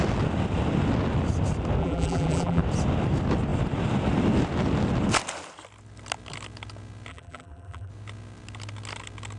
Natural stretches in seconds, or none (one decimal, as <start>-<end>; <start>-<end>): 0.0-1.8; 2.6-7.1; 7.9-9.4